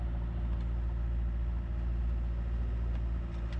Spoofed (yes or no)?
no